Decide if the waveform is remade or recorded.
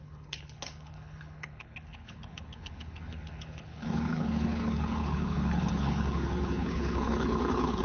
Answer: remade